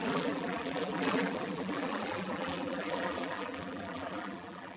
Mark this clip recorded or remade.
remade